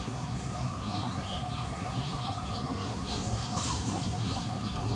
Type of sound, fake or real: fake